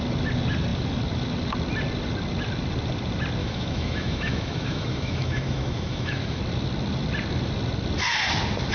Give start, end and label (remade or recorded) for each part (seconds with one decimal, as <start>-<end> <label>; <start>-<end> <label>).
0.0-3.4 recorded; 3.4-6.4 remade; 6.4-8.7 recorded